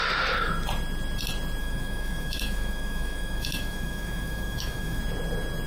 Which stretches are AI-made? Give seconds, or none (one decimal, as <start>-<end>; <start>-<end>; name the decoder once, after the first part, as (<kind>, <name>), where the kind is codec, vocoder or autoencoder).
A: 1.6-5.0 (autoencoder, DAC-VAE)